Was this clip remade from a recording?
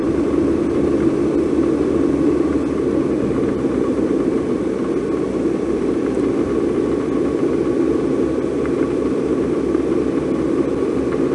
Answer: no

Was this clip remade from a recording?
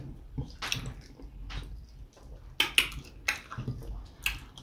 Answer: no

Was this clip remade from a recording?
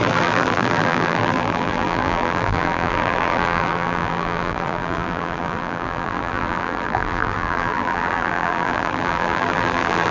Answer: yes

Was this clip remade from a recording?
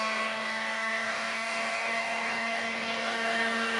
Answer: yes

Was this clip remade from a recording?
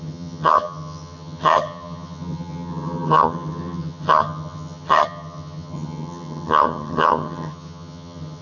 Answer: yes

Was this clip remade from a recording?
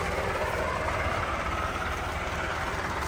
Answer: yes